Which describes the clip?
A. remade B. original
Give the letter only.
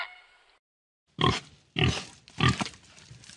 B